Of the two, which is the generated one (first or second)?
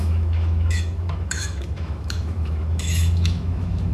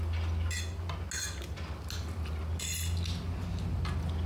first